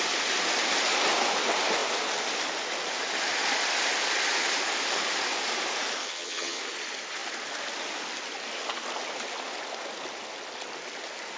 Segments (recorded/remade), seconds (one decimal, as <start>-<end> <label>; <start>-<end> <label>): 0.0-6.0 recorded; 6.0-6.6 remade; 6.6-11.4 recorded